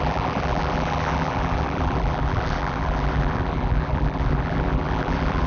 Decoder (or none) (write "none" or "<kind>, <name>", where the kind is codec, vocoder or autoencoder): vocoder, BigVGAN v2